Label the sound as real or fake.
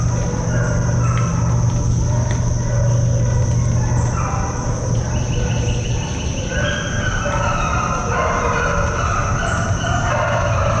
real